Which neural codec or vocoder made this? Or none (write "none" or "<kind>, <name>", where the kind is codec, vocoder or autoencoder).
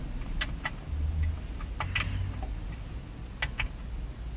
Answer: none